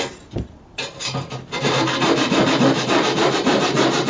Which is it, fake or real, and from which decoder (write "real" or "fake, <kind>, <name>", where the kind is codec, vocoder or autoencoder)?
fake, vocoder, BigVGAN v2